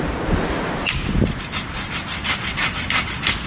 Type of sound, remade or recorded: recorded